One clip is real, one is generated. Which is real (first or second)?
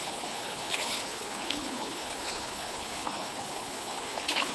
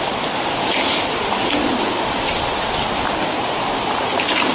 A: second